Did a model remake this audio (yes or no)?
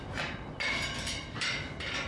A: no